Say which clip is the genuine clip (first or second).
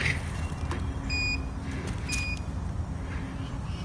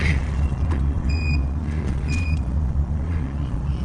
first